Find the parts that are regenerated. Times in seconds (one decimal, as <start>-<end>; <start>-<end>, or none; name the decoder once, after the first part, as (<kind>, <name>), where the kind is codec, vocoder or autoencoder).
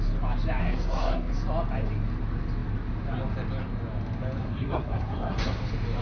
0.6-1.3 (codec, SNAC); 4.4-5.6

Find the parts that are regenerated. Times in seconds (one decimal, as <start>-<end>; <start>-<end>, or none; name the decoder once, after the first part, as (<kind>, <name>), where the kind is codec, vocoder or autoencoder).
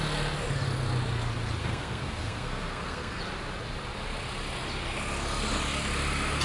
1.6-3.2 (codec, SNAC)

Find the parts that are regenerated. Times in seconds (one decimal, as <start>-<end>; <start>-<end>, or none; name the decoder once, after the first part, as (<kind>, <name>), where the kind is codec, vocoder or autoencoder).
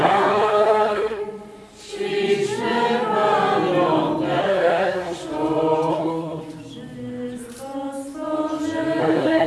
0.0-1.2 (codec, SNAC); 4.4-5.2; 5.9-6.4; 9.0-9.5